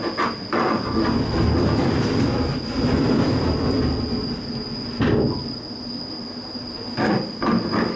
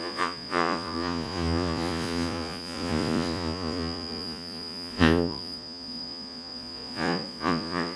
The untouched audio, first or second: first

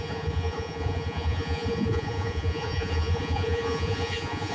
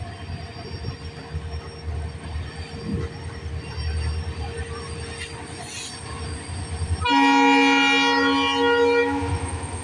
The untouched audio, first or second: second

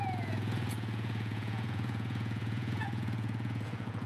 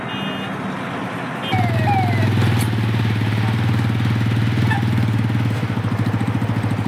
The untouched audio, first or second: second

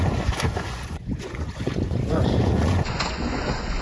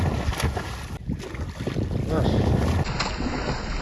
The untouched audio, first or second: second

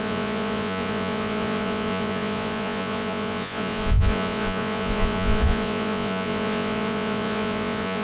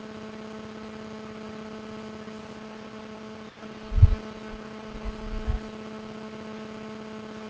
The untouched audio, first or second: second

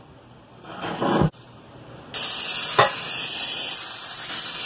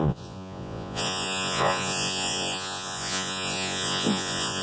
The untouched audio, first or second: first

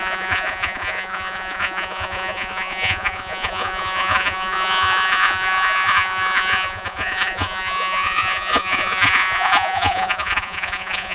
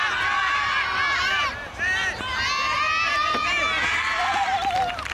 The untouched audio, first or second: second